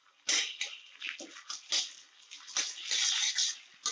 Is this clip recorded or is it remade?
recorded